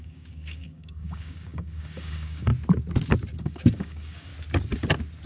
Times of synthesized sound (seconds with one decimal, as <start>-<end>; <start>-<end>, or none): 0.0-2.5; 3.4-4.3